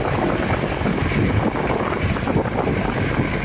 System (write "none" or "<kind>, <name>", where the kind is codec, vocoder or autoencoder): none